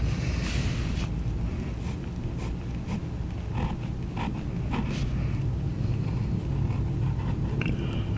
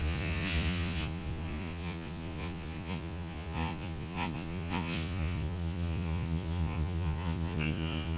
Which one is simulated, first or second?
second